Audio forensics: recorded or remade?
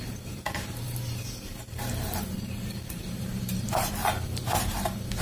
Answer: remade